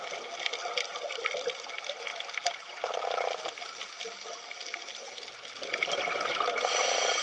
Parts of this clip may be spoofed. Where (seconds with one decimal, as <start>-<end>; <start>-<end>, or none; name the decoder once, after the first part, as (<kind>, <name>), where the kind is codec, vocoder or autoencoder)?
none